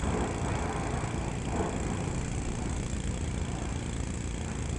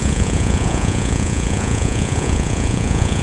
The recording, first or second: first